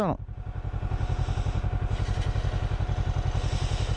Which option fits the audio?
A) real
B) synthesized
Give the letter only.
A